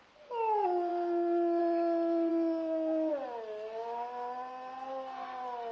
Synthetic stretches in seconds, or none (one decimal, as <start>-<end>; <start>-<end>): 0.9-1.6; 2.3-3.1